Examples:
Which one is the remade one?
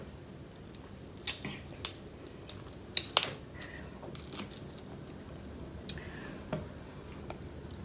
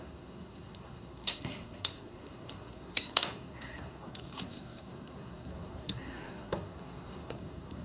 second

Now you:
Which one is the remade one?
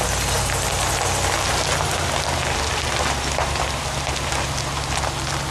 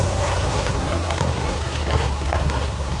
second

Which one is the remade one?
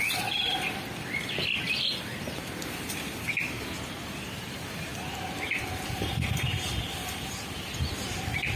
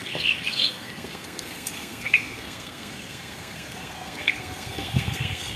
second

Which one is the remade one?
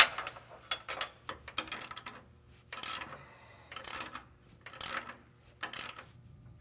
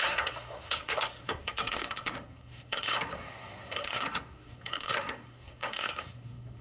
second